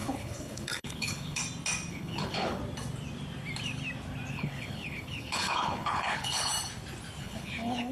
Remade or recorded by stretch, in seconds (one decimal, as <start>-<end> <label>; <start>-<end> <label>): 0.0-1.4 remade; 1.4-1.9 recorded; 1.9-2.6 remade; 2.6-4.3 recorded; 4.3-6.5 remade; 6.5-7.2 recorded; 7.2-7.9 remade